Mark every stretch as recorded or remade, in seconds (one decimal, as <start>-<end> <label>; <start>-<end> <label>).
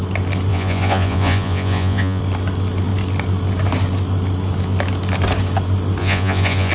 0.0-0.5 recorded; 0.5-2.2 remade; 2.2-6.0 recorded; 6.0-6.7 remade